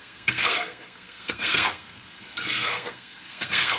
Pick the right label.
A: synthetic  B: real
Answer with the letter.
A